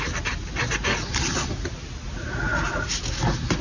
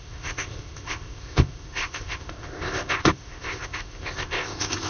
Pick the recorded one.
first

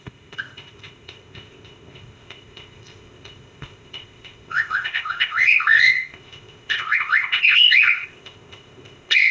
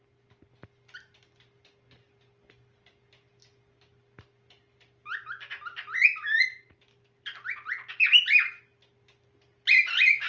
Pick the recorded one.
second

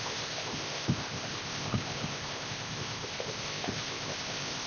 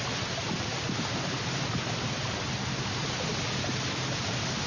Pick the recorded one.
second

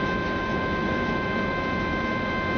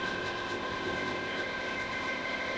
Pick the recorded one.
first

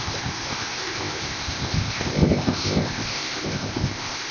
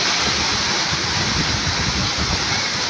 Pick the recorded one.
second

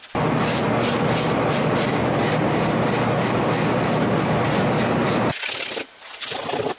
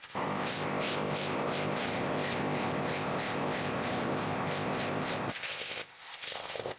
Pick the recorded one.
first